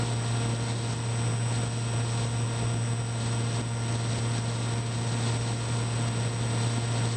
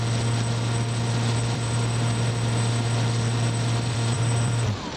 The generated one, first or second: second